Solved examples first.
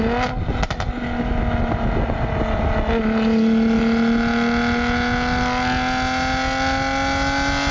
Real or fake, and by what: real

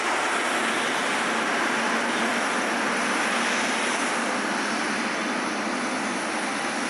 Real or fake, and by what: real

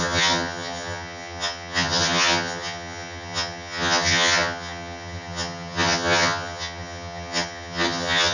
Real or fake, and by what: fake, vocoder, HiFi-GAN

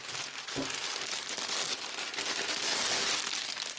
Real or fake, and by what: real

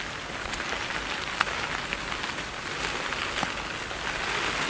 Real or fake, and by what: real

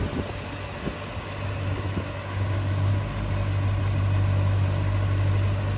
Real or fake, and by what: real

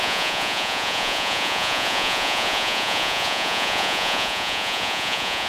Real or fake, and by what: fake, vocoder, Vocos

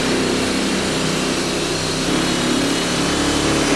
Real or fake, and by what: real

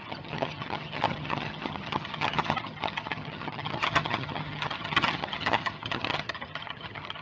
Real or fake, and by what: fake, vocoder, HiFi-GAN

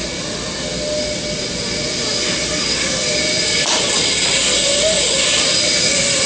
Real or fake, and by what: real